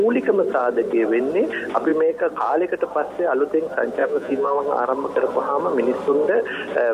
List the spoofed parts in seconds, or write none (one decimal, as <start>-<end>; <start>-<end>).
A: 4.0-4.6